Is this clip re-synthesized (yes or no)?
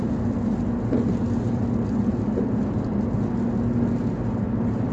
no